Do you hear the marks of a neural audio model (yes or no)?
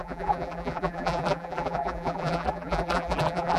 yes